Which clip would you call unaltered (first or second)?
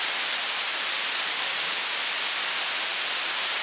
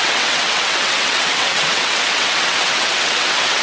first